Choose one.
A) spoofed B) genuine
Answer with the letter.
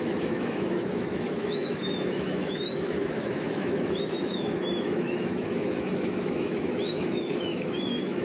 A